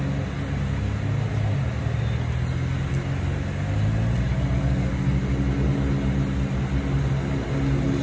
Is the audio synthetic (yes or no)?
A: no